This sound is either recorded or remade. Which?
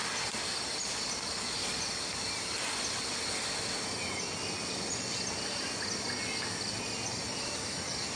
recorded